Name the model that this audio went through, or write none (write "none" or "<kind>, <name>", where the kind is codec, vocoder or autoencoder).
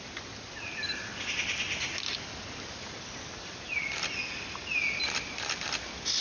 none